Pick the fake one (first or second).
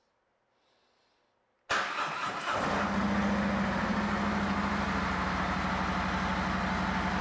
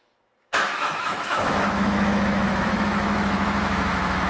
second